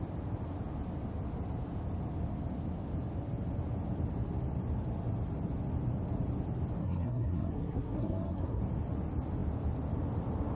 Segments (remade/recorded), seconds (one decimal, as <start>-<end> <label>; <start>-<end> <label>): 0.0-6.8 recorded; 6.8-8.6 remade; 8.6-10.6 recorded